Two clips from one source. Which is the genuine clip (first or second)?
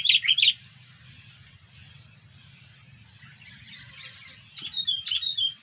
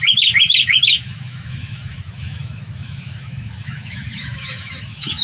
first